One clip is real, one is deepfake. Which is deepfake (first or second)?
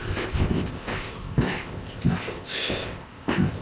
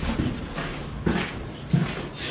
first